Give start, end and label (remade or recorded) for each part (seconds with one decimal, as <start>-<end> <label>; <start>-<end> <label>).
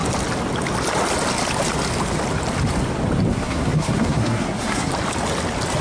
0.0-3.3 recorded; 3.3-4.9 remade; 4.9-5.8 recorded